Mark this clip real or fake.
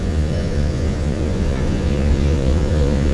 fake